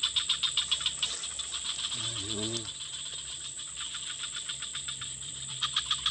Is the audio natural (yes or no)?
no